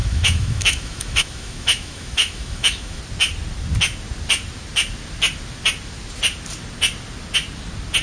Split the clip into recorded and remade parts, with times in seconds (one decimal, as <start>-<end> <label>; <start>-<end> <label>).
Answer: 0.0-3.0 remade; 3.0-8.0 recorded